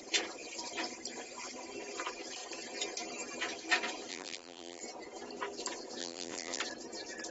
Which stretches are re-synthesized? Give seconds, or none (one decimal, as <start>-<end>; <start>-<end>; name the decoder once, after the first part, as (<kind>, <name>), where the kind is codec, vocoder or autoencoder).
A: 4.1-4.8 (vocoder, BigVGAN v2); 6.0-6.6